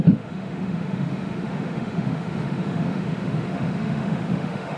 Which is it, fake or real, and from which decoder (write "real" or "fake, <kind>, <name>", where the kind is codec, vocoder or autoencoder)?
fake, autoencoder, DAC-VAE